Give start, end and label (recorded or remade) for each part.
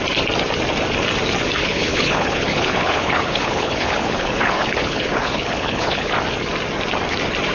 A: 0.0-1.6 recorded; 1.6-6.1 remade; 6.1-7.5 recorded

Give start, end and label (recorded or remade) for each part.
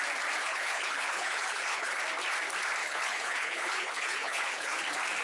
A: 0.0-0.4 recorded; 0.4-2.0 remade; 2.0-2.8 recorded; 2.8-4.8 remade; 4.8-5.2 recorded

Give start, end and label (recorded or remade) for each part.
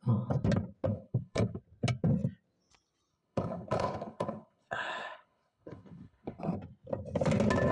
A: 0.0-0.9 recorded; 0.9-1.6 remade; 1.6-3.1 recorded; 3.1-6.4 remade; 6.4-7.7 recorded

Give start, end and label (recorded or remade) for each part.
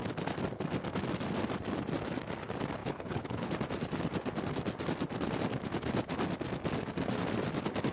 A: 0.0-2.8 recorded; 2.8-3.5 remade; 3.5-7.9 recorded